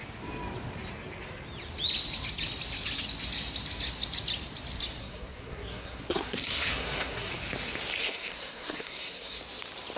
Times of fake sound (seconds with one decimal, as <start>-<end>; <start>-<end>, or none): 5.0-7.3; 8.0-9.4